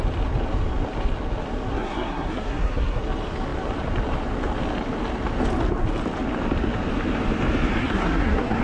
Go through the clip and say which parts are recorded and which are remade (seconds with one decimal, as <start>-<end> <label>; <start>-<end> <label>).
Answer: 0.0-1.7 recorded; 1.7-3.0 remade; 3.0-7.8 recorded; 7.8-8.6 remade